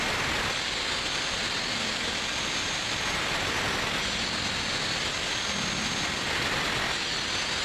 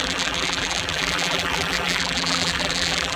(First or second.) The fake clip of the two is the second